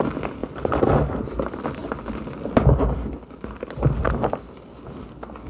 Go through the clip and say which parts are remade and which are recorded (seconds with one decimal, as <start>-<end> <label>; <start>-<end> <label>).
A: 0.0-5.5 recorded